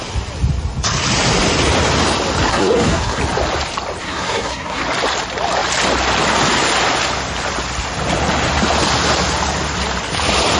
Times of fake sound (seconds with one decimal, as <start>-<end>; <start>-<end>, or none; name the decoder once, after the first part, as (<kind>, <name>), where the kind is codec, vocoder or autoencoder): 2.5-3.2 (codec, SNAC); 4.0-4.8